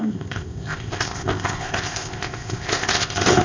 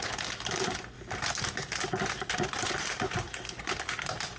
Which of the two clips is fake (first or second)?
first